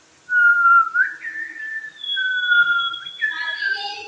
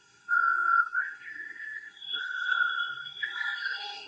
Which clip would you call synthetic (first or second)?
second